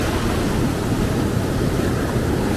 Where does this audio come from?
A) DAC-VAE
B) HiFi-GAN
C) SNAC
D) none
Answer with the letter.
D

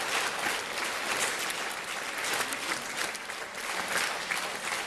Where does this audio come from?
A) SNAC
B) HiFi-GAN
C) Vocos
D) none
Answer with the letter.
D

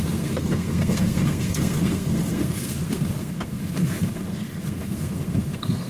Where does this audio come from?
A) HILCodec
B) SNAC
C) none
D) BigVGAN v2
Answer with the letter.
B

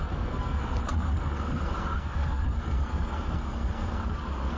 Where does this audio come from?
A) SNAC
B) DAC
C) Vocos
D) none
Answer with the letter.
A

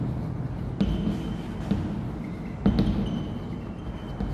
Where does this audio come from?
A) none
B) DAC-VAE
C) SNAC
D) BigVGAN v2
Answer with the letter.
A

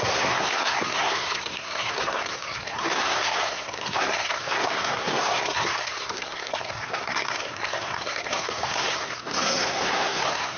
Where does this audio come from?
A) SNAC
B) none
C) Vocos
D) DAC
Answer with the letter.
A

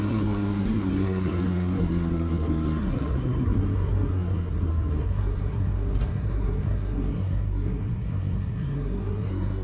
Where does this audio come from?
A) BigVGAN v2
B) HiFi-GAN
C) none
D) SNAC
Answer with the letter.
D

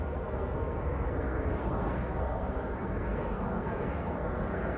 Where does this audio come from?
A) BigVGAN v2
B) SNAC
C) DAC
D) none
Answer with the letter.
B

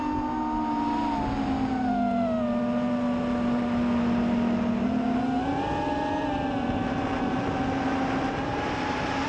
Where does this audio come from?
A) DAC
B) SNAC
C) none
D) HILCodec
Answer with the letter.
C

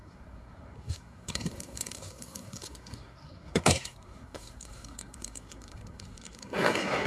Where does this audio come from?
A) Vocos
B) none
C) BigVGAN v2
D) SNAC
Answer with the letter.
D